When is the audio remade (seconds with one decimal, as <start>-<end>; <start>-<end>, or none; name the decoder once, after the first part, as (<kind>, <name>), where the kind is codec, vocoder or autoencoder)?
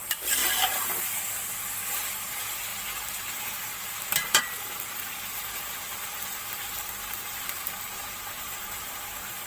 0.0-0.4 (vocoder, BigVGAN v2); 2.2-9.5